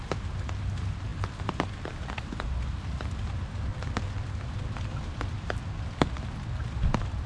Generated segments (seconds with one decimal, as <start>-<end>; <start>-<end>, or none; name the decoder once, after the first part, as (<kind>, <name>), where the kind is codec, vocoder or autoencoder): 1.1-2.6 (vocoder, BigVGAN v2); 3.7-5.6